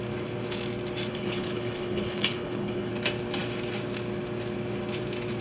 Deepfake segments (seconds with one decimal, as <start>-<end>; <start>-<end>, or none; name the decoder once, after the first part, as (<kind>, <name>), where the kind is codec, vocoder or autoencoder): 1.1-2.9 (codec, HILCodec)